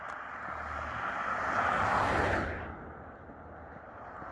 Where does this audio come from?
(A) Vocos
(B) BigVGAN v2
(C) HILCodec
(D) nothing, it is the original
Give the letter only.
D